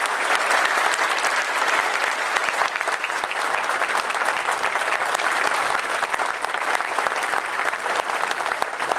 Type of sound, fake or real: real